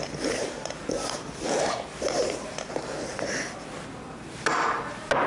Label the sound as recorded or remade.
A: recorded